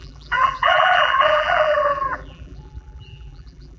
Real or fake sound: fake